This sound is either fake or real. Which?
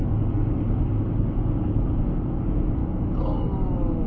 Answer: real